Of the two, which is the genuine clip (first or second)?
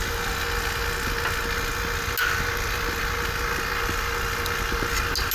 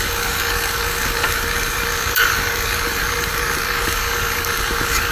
first